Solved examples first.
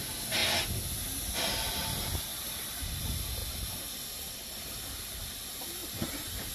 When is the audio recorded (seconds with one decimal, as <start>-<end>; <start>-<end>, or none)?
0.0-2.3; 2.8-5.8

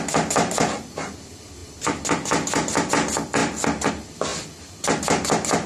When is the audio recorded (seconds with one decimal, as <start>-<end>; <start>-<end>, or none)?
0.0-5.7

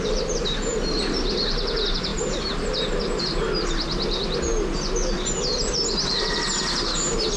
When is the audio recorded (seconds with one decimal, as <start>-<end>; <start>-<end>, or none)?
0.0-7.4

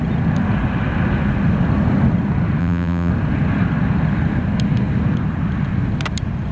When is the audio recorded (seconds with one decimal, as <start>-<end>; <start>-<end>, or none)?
0.0-2.6; 3.1-6.5

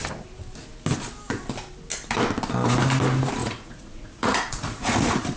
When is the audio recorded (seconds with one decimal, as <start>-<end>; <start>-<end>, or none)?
0.0-3.4

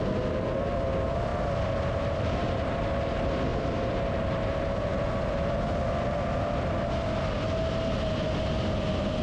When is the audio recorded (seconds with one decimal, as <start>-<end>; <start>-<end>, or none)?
0.0-3.5; 4.5-9.2